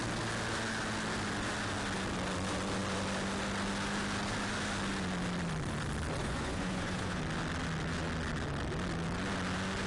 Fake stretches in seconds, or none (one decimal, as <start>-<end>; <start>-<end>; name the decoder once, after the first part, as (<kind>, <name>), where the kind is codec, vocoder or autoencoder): 6.2-7.2 (vocoder, Vocos)